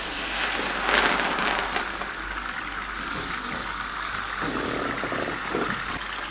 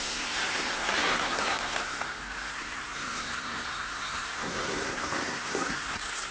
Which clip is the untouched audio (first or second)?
first